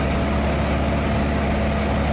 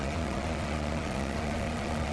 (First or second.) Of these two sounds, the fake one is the second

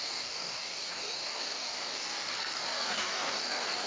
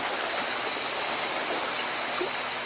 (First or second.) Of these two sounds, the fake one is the first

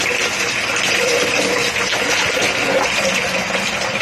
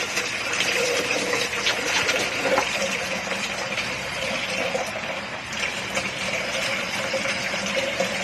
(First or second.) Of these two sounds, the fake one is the second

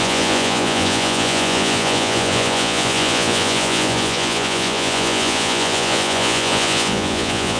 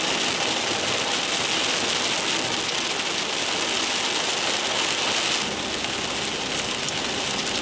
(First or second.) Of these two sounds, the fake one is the first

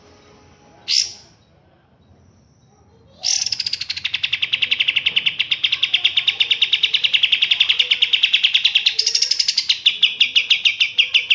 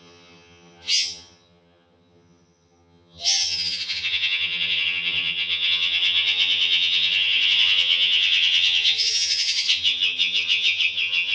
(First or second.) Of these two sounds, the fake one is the second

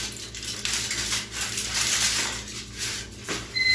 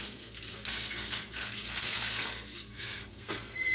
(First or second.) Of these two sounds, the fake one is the second